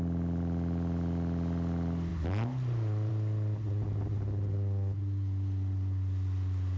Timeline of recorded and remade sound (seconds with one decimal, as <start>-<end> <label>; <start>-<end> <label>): 0.0-6.8 recorded